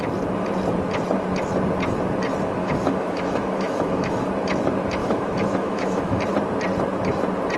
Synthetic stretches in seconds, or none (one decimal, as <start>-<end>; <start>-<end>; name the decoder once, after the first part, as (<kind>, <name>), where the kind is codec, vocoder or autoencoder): 2.6-4.3 (autoencoder, DAC-VAE); 5.0-6.2